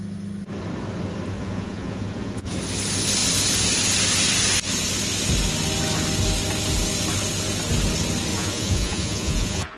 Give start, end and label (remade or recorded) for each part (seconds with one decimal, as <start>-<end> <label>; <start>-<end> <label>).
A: 0.0-1.3 recorded; 1.3-2.5 remade; 2.5-8.3 recorded; 8.3-9.8 remade